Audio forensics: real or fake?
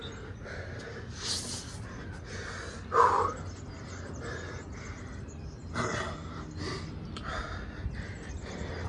real